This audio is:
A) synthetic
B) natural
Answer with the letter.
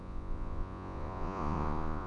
A